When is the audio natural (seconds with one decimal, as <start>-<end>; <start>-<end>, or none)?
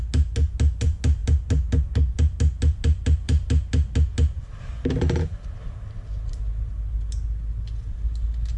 0.0-8.6